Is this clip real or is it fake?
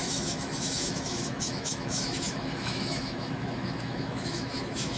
fake